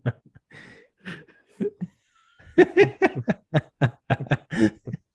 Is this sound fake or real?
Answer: fake